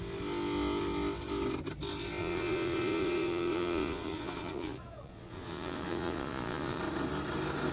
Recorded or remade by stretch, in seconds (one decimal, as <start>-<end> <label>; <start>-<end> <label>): 0.0-2.2 recorded; 2.2-6.8 remade; 6.8-7.7 recorded